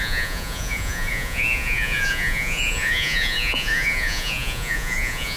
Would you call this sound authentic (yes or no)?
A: no